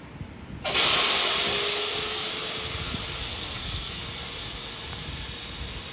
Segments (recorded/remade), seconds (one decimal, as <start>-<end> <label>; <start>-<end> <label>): 0.0-1.8 recorded; 1.8-2.3 remade; 2.3-3.3 recorded; 3.3-4.0 remade; 4.0-5.9 recorded